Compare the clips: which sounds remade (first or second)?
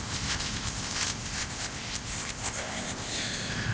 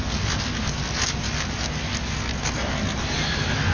first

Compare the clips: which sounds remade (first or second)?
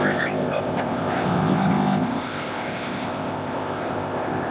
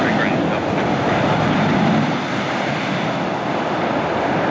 first